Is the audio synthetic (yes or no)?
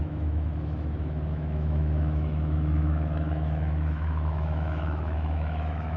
yes